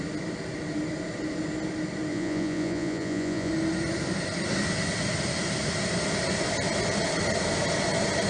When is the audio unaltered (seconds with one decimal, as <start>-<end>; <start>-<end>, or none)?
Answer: 0.0-2.1; 3.5-8.3